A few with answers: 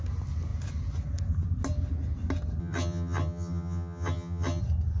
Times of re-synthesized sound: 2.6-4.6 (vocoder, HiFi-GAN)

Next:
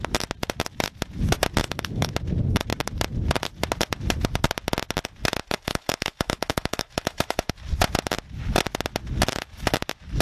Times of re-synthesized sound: 1.6-2.1 (autoencoder, DAC-VAE); 5.4-7.5

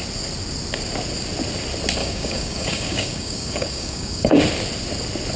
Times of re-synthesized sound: 2.0-4.4 (codec, DAC)

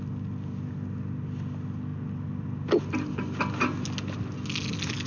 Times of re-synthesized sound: none

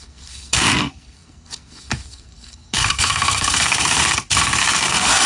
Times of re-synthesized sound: 0.0-4.0 (codec, SNAC); 4.6-5.3